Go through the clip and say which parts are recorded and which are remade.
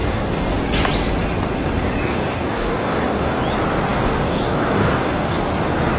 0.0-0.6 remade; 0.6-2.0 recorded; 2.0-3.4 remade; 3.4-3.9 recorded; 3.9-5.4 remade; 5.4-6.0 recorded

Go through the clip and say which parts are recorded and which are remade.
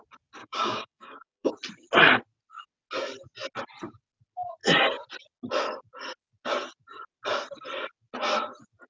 0.0-0.4 recorded; 0.4-1.5 remade; 1.5-8.9 recorded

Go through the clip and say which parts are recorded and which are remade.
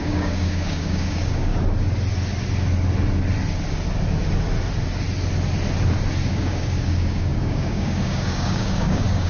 0.0-1.5 remade; 1.5-6.3 recorded; 6.3-9.3 remade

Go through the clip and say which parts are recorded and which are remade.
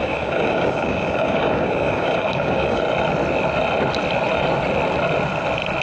0.0-2.8 remade; 2.8-5.8 recorded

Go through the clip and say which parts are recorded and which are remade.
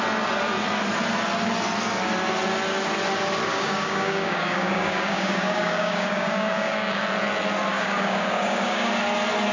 0.0-3.5 recorded; 3.5-7.0 remade; 7.0-7.7 recorded; 7.7-8.9 remade; 8.9-9.5 recorded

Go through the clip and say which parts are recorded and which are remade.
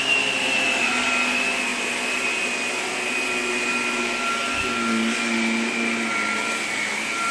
0.0-7.3 recorded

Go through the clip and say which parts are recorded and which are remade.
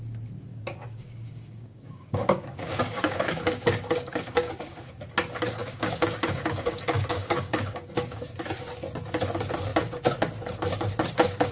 0.0-0.5 recorded; 0.5-5.0 remade; 5.0-5.6 recorded; 5.6-8.2 remade; 8.2-11.5 recorded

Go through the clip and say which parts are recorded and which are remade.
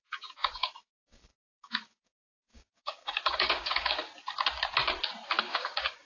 0.0-4.1 remade; 4.1-5.4 recorded; 5.4-6.0 remade